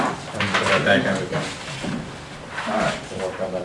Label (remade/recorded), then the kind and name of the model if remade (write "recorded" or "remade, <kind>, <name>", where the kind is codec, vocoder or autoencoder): remade, vocoder, BigVGAN v2